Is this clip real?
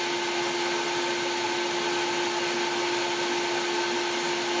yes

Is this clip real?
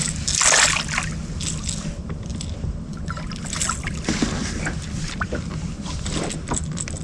yes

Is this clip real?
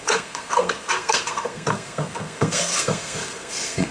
no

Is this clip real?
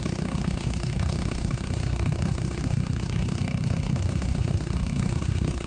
no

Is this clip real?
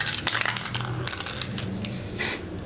yes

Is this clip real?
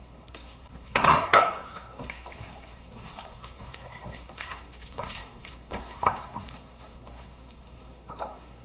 no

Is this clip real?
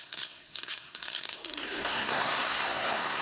no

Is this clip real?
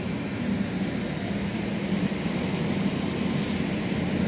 yes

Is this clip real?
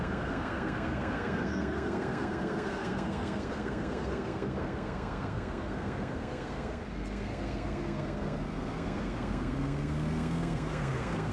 no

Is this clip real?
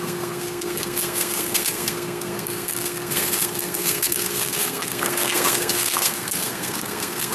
no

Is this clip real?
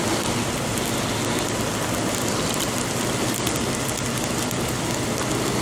yes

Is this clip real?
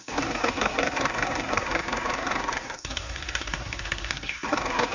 no